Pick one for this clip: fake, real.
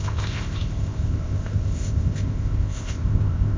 fake